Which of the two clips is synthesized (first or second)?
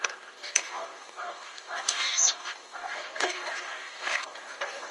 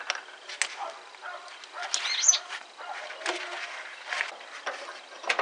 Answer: first